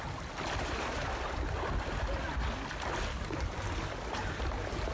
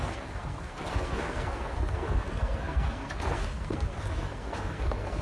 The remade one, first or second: second